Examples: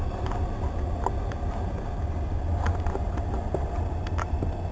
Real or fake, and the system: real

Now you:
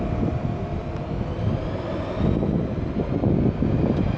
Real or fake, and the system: real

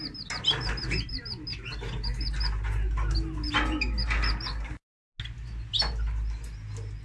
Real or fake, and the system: real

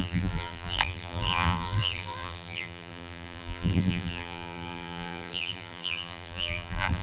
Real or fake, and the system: fake, vocoder, BigVGAN v2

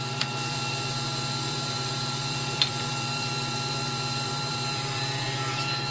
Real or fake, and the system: fake, vocoder, BigVGAN v2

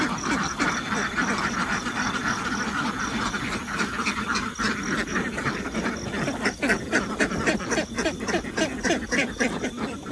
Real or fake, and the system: fake, vocoder, BigVGAN v2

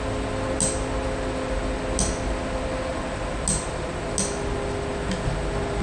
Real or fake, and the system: real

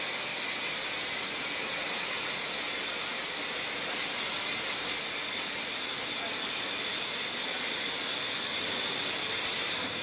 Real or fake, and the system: real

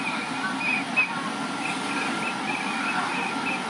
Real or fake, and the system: real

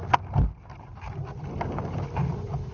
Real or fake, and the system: real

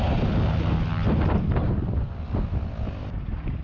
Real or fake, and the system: real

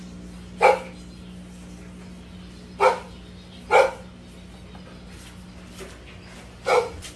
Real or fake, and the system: real